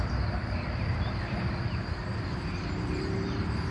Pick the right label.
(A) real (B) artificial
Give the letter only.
B